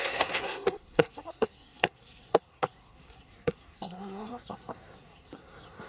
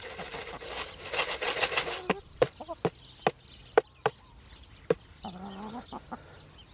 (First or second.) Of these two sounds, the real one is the second